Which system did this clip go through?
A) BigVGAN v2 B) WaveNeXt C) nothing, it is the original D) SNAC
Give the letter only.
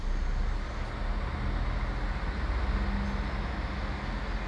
C